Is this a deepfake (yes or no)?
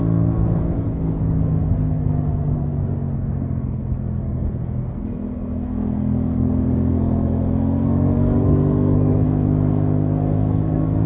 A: yes